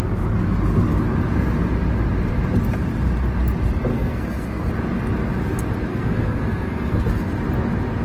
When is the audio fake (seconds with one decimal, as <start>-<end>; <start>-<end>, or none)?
3.9-4.7; 5.9-7.3